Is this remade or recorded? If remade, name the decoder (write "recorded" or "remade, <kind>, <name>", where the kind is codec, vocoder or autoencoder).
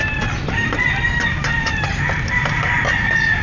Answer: recorded